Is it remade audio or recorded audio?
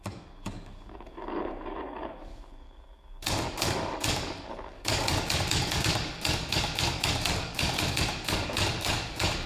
remade